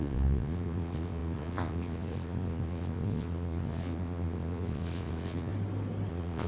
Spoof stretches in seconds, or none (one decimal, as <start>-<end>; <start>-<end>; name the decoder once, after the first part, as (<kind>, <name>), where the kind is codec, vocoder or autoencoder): 0.0-5.5 (vocoder, Vocos); 6.1-6.5